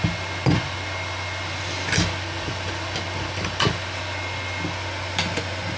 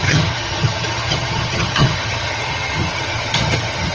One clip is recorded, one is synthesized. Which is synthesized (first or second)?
second